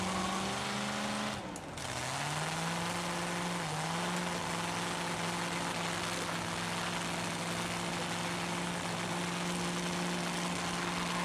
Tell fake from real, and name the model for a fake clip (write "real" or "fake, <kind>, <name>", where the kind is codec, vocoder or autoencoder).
real